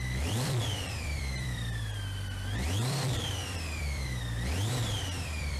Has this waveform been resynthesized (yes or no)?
yes